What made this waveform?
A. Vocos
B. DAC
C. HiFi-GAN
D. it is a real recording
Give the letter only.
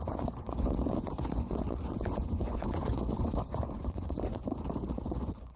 A